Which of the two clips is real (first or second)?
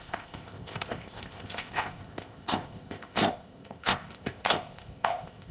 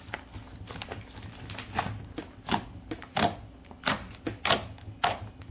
second